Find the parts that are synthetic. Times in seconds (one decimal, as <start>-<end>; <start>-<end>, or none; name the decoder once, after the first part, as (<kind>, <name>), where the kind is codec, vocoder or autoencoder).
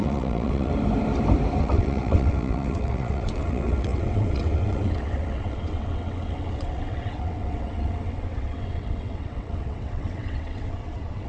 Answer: 0.0-0.7 (vocoder, WaveNeXt); 1.6-11.3